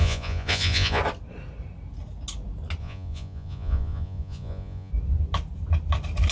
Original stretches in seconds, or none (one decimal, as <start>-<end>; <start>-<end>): 1.0-2.8; 4.9-6.3